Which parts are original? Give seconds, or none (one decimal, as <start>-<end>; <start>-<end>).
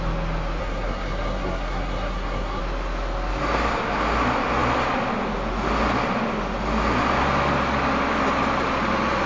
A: 0.0-0.6; 2.6-9.3